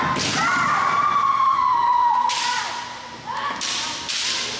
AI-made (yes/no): no